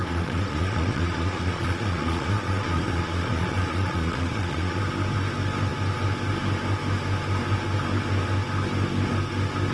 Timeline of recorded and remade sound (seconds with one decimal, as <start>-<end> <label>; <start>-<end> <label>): 0.0-4.8 remade; 4.8-9.7 recorded